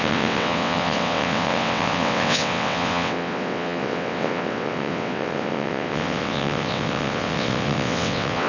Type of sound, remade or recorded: remade